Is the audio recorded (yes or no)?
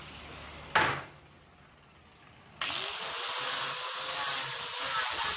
yes